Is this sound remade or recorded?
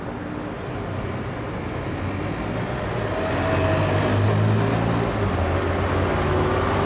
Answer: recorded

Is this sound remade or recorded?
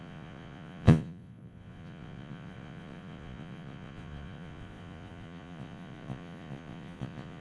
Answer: remade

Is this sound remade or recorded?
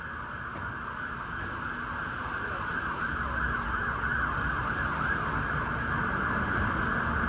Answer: recorded